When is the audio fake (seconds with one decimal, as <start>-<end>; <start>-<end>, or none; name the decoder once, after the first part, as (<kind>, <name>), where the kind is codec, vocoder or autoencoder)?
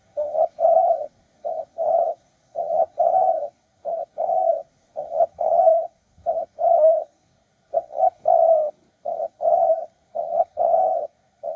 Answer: 0.0-8.2 (codec, SNAC); 8.9-11.6